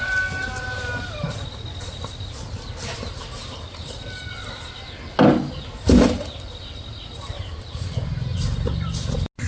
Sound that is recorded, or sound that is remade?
recorded